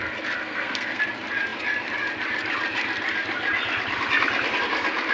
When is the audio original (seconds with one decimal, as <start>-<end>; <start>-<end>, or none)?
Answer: 0.0-0.4; 1.0-5.1